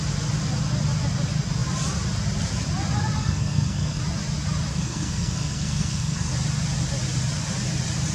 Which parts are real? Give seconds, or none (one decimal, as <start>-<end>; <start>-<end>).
0.0-3.2; 4.0-4.7; 6.3-8.1